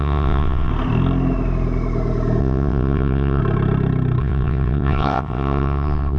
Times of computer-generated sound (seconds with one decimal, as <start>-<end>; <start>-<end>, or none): 0.0-0.7; 2.4-3.4; 4.2-6.2